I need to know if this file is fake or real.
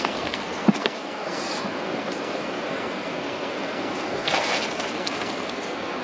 fake